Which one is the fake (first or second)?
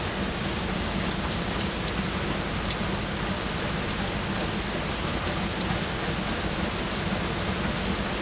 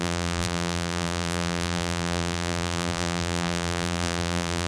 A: second